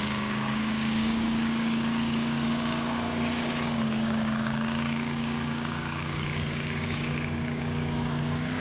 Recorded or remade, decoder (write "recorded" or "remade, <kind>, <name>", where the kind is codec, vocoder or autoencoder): remade, codec, DAC